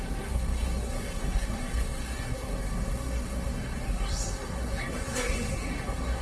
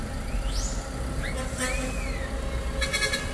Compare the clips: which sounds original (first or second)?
second